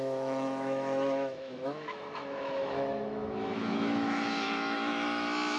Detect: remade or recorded remade